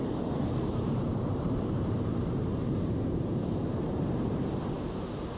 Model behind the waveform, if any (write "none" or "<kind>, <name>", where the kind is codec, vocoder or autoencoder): vocoder, BigVGAN v2